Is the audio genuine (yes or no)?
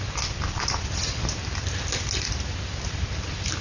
yes